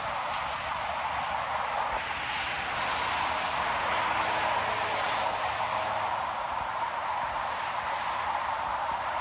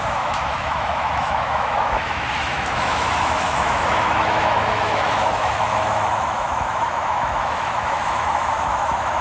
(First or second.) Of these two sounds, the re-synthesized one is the second